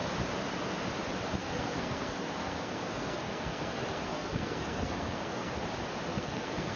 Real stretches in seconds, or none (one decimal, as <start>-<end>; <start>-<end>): 0.0-1.4; 5.5-6.1